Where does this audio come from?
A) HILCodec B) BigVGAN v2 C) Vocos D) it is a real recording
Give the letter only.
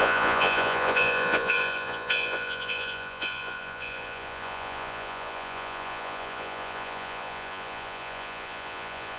C